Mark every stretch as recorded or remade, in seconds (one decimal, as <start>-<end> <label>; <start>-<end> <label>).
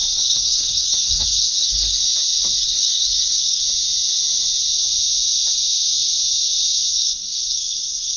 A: 0.0-2.0 remade; 2.0-2.6 recorded; 2.6-3.6 remade; 3.6-6.9 recorded; 6.9-8.2 remade